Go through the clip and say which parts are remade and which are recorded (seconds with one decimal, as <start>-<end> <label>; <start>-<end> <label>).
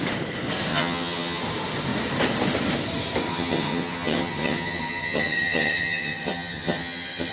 0.0-0.7 recorded; 0.7-1.4 remade; 1.4-3.3 recorded; 3.3-7.3 remade